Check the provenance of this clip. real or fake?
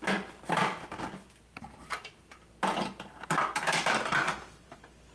real